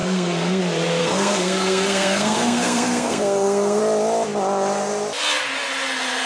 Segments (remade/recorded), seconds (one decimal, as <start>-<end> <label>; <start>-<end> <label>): 0.0-0.6 remade; 0.6-1.0 recorded; 1.0-3.8 remade; 3.8-6.3 recorded

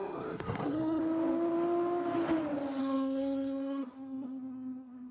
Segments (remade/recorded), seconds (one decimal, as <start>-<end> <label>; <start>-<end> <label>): 0.0-1.0 remade; 1.0-2.8 recorded; 2.8-5.1 remade

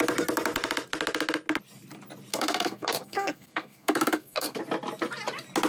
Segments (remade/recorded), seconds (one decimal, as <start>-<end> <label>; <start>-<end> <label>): 0.0-2.3 recorded; 2.3-4.6 remade; 4.6-5.7 recorded